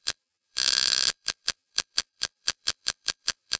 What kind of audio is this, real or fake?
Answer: fake